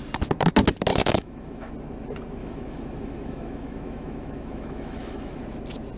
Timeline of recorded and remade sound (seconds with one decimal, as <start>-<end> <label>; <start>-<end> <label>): 0.0-0.9 recorded; 0.9-1.7 remade; 1.7-2.4 recorded; 2.4-5.4 remade; 5.4-6.0 recorded